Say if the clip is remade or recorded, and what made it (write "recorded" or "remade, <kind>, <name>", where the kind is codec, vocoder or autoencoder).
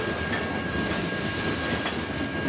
recorded